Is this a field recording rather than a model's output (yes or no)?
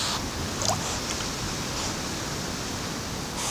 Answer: yes